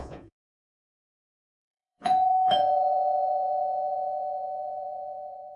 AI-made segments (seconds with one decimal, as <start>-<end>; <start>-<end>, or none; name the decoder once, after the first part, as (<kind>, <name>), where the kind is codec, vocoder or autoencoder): 0.0-5.6 (vocoder, Vocos)